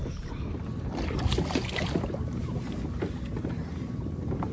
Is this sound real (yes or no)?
yes